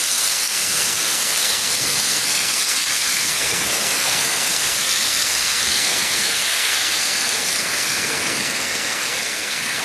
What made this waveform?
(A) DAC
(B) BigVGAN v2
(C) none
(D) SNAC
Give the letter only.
D